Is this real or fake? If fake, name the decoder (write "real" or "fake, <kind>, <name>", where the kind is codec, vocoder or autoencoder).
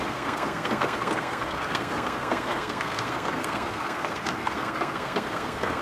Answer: fake, codec, SNAC